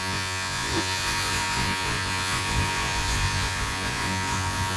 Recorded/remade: remade